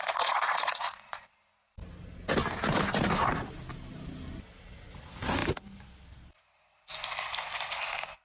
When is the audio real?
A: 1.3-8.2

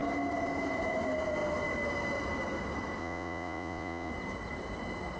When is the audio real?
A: 0.0-3.0; 4.1-5.2

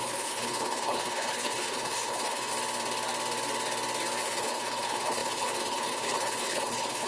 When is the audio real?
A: 2.5-4.2

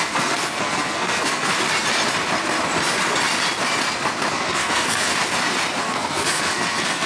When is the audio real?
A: 1.5-4.3; 5.1-5.8

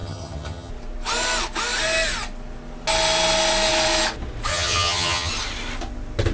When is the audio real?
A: 0.7-4.5; 5.3-6.3